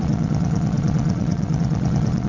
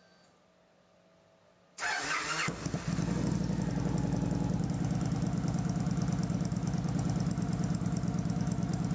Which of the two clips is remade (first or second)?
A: first